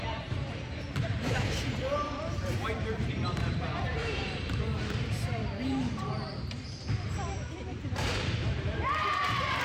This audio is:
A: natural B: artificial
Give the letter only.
B